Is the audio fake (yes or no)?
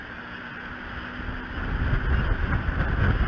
no